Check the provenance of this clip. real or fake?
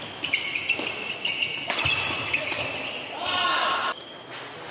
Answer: real